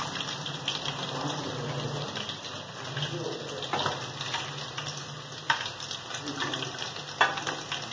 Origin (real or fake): real